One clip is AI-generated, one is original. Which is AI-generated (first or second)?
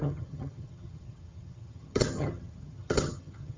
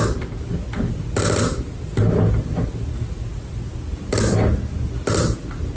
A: first